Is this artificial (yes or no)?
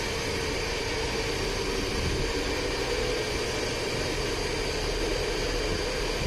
no